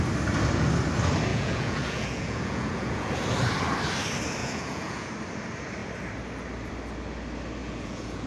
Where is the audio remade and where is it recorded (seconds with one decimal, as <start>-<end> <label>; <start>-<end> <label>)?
0.0-1.3 recorded; 1.3-3.1 remade; 3.1-4.4 recorded; 4.4-5.1 remade; 5.1-7.6 recorded; 7.6-8.3 remade